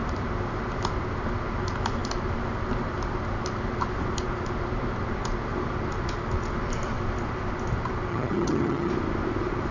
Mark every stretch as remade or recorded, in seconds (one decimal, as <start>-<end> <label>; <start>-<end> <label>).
0.0-8.1 recorded; 8.1-8.9 remade; 8.9-9.7 recorded

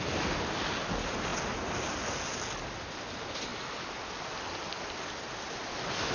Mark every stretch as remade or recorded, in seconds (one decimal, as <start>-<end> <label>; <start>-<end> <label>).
0.0-6.1 recorded

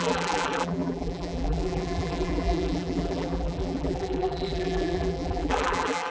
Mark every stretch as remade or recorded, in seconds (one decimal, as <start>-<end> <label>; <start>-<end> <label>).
0.0-6.1 remade

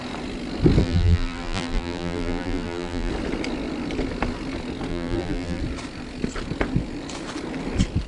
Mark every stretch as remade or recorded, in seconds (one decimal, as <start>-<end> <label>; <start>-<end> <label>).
0.0-0.8 recorded; 0.8-3.1 remade; 3.1-4.9 recorded; 4.9-5.6 remade; 5.6-8.1 recorded

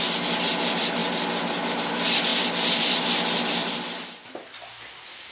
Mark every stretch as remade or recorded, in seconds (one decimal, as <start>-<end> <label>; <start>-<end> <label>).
0.0-2.3 recorded; 2.3-3.0 remade; 3.0-3.6 recorded; 3.6-4.8 remade; 4.8-5.3 recorded

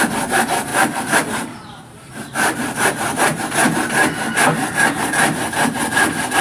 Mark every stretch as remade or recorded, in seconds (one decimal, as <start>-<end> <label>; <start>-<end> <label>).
0.0-0.7 recorded; 0.7-3.4 remade; 3.4-6.4 recorded

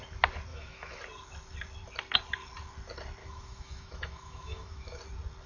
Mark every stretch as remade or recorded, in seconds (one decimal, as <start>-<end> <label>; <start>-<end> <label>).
0.0-0.5 recorded; 0.5-1.0 remade; 1.0-3.2 recorded; 3.2-5.0 remade; 5.0-5.5 recorded

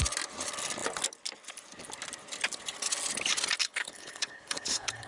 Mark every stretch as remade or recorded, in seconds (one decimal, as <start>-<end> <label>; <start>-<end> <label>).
0.0-3.6 recorded; 3.6-5.1 remade